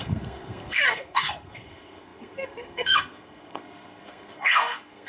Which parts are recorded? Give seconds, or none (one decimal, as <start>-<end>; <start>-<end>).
none